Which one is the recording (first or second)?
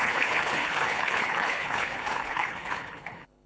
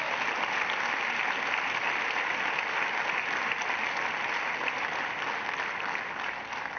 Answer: second